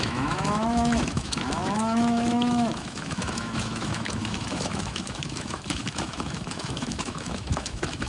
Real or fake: fake